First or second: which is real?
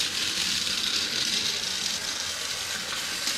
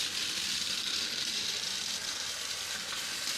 first